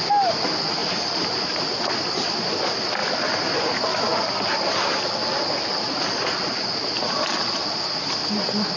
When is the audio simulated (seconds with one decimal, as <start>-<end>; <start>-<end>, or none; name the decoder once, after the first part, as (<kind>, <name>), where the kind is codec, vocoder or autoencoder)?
none